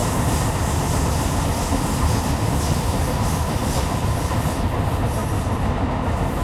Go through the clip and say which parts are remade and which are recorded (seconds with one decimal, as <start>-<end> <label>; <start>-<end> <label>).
0.0-6.4 recorded